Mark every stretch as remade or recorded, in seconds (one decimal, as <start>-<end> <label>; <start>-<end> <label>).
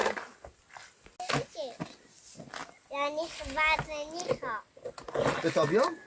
0.0-6.1 recorded